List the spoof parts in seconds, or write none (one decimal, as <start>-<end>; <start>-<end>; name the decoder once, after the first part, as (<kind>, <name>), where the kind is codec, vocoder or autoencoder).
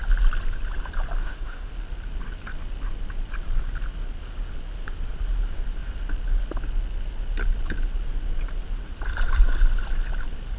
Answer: 1.2-1.7 (autoencoder, DAC-VAE)